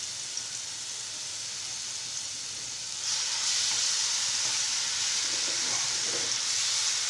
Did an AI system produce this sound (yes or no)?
no